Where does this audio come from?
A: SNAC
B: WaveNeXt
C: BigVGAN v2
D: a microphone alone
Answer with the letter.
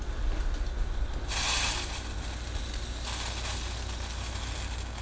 D